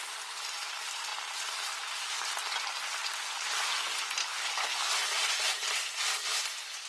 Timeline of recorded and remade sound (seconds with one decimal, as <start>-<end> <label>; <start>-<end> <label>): 0.0-4.2 recorded; 4.2-4.9 remade; 4.9-6.9 recorded